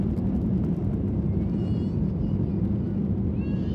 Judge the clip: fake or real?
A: real